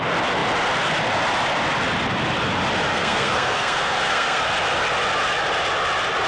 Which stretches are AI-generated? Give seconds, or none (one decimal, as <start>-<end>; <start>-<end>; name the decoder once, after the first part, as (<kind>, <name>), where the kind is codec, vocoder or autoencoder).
2.9-4.4 (codec, SNAC)